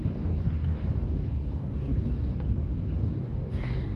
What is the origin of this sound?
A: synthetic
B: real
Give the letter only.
A